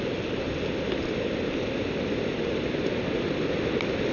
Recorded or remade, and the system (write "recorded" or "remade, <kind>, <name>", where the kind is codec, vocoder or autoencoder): recorded